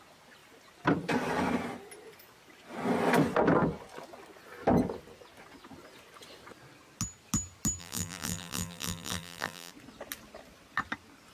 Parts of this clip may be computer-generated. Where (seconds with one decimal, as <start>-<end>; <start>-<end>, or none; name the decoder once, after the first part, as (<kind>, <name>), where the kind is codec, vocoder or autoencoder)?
7.8-9.7 (vocoder, BigVGAN v2)